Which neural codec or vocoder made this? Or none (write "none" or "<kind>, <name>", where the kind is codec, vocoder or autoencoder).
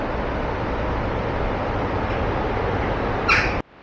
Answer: none